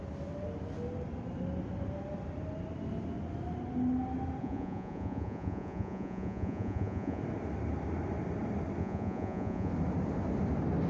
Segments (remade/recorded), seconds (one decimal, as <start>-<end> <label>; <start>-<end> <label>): 0.0-4.4 recorded; 4.4-7.2 remade; 7.2-8.8 recorded; 8.8-9.7 remade; 9.7-10.9 recorded